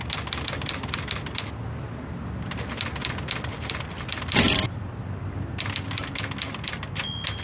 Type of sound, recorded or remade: recorded